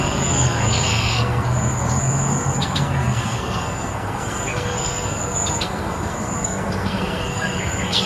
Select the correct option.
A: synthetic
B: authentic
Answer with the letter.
A